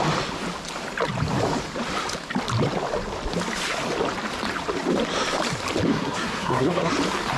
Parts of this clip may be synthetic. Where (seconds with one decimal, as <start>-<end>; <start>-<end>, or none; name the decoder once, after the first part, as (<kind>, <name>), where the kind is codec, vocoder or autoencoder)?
5.9-6.9 (codec, SNAC)